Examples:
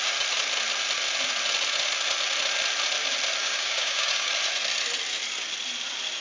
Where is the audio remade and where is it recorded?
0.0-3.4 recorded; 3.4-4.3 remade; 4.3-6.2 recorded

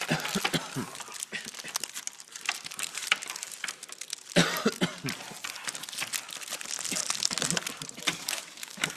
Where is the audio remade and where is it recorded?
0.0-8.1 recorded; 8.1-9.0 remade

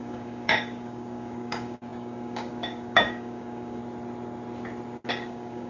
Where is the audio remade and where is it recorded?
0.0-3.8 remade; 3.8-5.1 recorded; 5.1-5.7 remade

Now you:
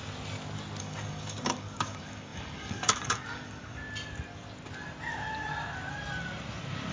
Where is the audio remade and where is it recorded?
0.0-0.8 recorded; 0.8-3.8 remade; 3.8-6.9 recorded

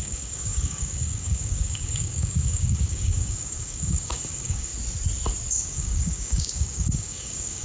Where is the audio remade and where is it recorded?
0.0-4.7 remade; 4.7-5.5 recorded; 5.5-7.6 remade